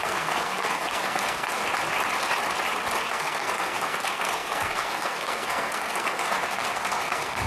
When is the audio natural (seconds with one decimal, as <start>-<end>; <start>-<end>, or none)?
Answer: 1.6-3.0